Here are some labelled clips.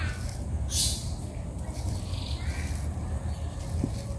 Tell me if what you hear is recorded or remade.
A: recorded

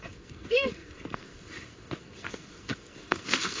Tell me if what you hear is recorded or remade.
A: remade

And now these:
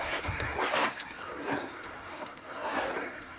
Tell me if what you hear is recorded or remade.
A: remade